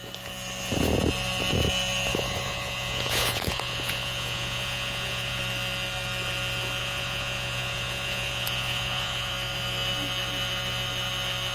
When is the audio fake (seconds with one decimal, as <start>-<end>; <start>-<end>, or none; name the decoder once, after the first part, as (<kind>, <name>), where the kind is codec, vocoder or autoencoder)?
2.1-5.4 (vocoder, Vocos); 6.8-9.3